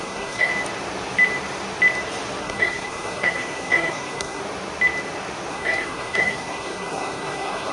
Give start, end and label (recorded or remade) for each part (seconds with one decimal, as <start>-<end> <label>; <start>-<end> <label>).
0.0-0.5 remade; 0.5-2.4 recorded; 2.4-4.4 remade; 4.4-5.5 recorded; 5.5-7.7 remade

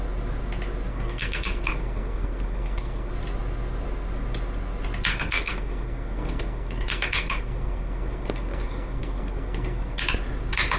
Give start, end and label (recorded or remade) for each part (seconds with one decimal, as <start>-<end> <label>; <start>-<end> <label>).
0.0-0.9 recorded; 0.9-3.1 remade; 3.1-5.1 recorded; 5.1-10.0 remade; 10.0-10.8 recorded

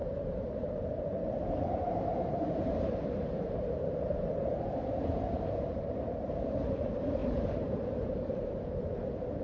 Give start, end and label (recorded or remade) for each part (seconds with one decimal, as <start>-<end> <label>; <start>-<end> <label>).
0.0-9.4 remade